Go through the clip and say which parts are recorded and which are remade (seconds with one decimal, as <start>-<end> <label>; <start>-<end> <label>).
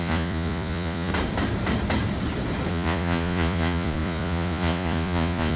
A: 0.0-1.1 remade; 1.1-2.7 recorded; 2.7-5.6 remade